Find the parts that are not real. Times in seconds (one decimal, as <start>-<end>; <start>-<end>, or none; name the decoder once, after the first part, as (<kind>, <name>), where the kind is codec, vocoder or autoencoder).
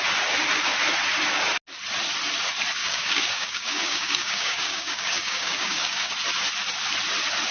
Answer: 2.8-6.1 (codec, DAC)